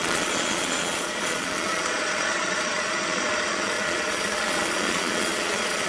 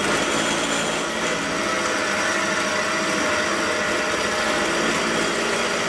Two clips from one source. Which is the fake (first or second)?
first